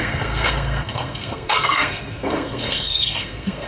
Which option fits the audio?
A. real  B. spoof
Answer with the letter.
B